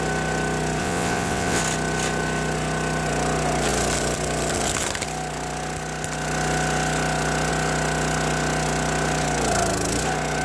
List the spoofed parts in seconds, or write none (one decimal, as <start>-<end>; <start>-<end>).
0.8-1.6